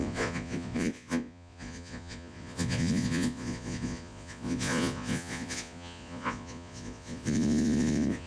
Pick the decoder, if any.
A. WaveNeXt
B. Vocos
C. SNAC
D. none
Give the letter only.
B